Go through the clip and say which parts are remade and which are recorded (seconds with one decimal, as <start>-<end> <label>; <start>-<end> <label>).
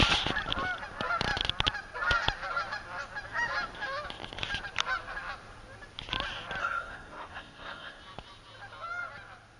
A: 0.0-6.6 recorded; 6.6-8.0 remade; 8.0-9.6 recorded